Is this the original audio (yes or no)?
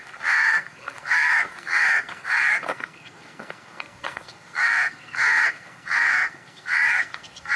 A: no